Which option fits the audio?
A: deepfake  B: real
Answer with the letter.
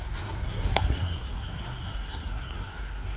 A